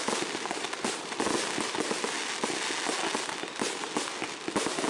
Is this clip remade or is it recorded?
recorded